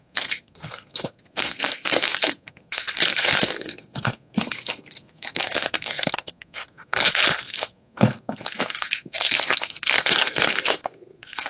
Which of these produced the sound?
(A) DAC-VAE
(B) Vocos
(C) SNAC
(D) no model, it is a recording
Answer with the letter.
C